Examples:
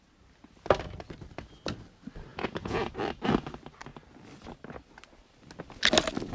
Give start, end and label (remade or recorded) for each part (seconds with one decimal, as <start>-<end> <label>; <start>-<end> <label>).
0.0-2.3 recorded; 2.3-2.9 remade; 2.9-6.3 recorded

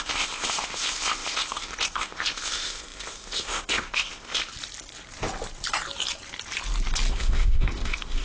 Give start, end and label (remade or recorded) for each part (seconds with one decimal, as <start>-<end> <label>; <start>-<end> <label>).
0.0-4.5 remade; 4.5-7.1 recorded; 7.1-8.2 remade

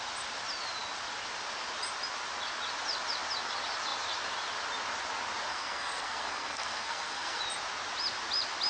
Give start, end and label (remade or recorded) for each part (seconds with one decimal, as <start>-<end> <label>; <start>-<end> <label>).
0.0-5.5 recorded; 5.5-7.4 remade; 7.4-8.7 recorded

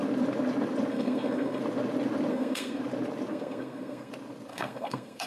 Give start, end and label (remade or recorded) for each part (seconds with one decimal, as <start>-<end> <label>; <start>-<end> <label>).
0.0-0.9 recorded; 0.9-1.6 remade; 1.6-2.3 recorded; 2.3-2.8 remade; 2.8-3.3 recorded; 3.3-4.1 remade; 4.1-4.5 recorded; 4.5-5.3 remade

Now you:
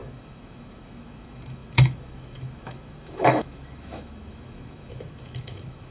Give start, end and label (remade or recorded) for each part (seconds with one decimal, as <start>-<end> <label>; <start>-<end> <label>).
0.0-5.9 remade

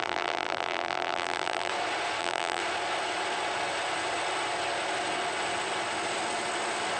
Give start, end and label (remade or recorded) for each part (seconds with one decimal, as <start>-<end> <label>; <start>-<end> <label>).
0.0-1.7 remade; 1.7-2.2 recorded; 2.2-2.6 remade; 2.6-7.0 recorded